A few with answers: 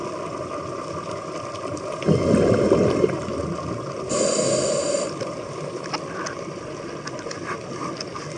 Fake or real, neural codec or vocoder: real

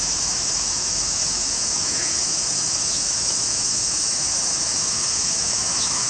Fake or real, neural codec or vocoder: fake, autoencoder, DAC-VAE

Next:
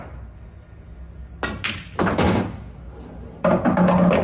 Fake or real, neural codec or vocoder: real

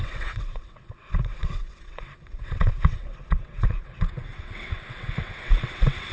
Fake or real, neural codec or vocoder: fake, vocoder, WaveNeXt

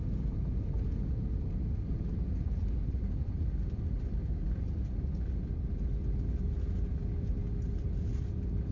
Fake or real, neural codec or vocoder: real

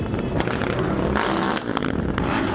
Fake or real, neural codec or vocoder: real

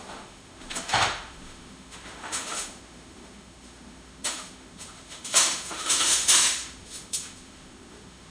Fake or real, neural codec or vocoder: fake, autoencoder, DAC-VAE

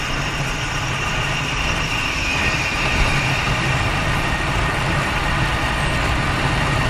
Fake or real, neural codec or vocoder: real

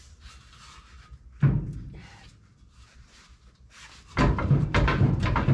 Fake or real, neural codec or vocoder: real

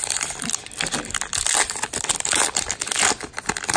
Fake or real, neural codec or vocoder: real